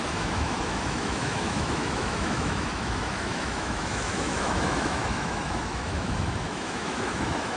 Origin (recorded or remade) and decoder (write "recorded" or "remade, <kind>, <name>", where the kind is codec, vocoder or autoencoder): remade, autoencoder, DAC-VAE